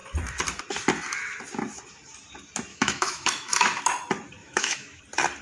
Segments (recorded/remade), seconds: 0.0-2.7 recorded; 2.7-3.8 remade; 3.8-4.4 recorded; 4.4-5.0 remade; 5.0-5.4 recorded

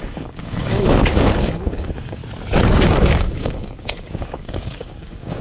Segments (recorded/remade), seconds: 0.0-2.2 remade; 2.2-2.8 recorded; 2.8-5.4 remade

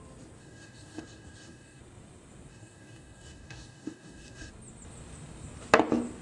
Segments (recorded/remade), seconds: 0.0-0.4 recorded; 0.4-1.8 remade; 1.8-2.5 recorded; 2.5-4.5 remade; 4.5-6.2 recorded

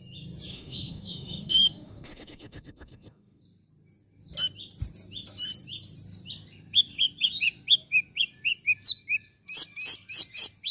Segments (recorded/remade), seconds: 0.0-0.5 recorded; 0.5-3.4 remade; 3.4-10.7 recorded

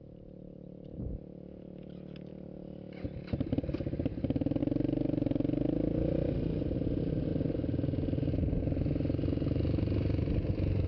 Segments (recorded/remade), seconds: 0.0-10.9 recorded

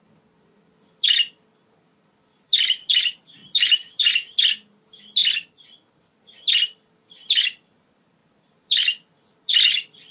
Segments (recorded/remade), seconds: 0.0-5.2 remade; 5.2-6.6 recorded; 6.6-10.1 remade